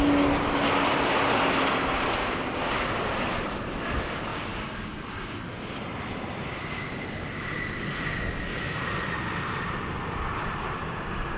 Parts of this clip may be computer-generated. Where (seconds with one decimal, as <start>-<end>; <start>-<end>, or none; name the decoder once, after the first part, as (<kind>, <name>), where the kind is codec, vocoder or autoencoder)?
none